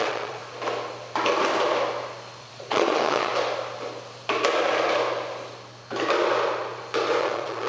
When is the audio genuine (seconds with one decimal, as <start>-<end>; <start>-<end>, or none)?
0.4-2.4; 3.3-7.2